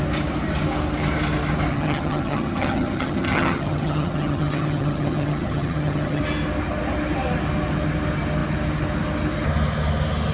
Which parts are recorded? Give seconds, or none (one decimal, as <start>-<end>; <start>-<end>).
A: 0.0-1.7; 6.2-10.3